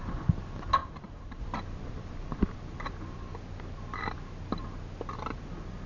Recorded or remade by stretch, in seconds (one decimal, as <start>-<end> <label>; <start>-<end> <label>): 0.0-0.8 recorded; 0.8-1.4 remade; 1.4-5.9 recorded